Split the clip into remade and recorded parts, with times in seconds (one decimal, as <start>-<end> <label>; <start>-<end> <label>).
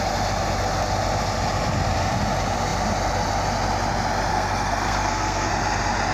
0.0-4.3 recorded; 4.3-5.5 remade; 5.5-6.1 recorded